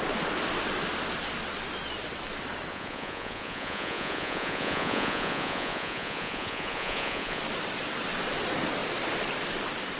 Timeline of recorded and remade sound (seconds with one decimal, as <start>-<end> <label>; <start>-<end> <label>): 0.0-2.7 recorded; 2.7-7.4 remade; 7.4-10.0 recorded